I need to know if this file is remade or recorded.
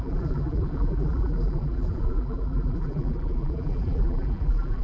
remade